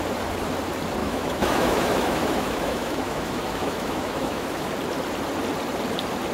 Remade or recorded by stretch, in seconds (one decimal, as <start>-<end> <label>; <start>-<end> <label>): 0.0-1.0 recorded; 1.0-4.7 remade; 4.7-6.3 recorded

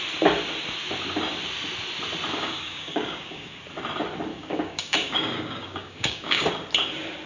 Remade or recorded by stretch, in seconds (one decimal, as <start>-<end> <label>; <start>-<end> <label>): 0.0-2.4 recorded; 2.4-3.6 remade; 3.6-4.3 recorded; 4.3-6.5 remade; 6.5-7.3 recorded

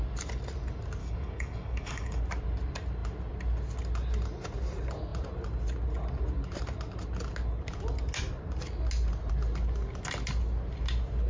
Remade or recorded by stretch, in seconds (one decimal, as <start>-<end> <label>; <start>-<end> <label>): 0.0-1.0 recorded; 1.0-2.2 remade; 2.2-11.3 recorded

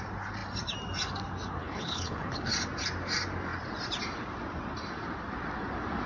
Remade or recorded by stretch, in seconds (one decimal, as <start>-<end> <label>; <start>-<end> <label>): 0.0-1.6 recorded; 1.6-2.5 remade; 2.5-6.1 recorded

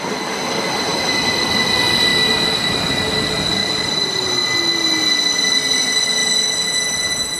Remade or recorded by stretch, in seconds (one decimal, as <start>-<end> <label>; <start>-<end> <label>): 0.0-0.9 recorded; 0.9-1.5 remade; 1.5-2.1 recorded; 2.1-2.8 remade; 2.8-3.6 recorded; 3.6-4.3 remade; 4.3-7.4 recorded

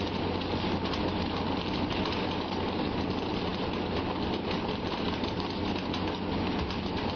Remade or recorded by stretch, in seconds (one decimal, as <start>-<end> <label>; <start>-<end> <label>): 0.0-7.2 recorded